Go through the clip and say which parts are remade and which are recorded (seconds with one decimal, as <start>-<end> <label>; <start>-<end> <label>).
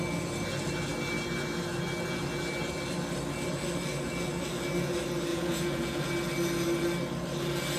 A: 0.0-5.3 recorded; 5.3-6.1 remade; 6.1-7.8 recorded